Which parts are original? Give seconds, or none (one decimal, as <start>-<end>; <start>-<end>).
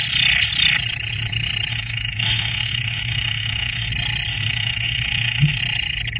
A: 0.0-1.7; 3.9-4.3; 5.6-6.2